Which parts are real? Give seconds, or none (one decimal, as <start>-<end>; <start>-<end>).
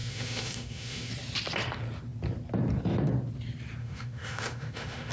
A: 1.1-3.8